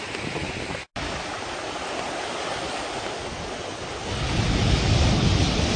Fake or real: real